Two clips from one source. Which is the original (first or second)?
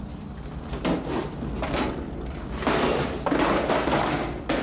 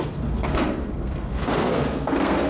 first